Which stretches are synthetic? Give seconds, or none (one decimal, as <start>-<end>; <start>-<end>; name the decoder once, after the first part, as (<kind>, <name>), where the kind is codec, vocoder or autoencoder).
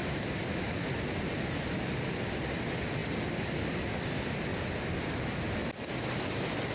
0.0-0.7 (vocoder, BigVGAN v2)